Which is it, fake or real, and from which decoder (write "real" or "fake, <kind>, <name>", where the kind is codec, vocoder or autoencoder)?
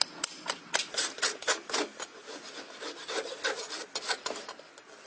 real